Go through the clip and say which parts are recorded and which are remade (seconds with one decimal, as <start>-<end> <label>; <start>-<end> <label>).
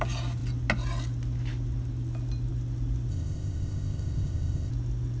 0.0-3.1 recorded; 3.1-4.7 remade; 4.7-5.2 recorded